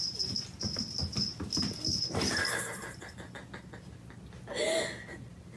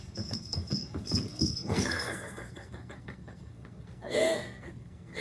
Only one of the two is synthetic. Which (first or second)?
second